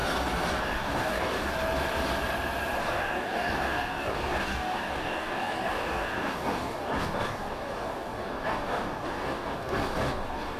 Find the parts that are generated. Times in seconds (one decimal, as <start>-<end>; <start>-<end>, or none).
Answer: 0.6-1.5; 2.8-10.6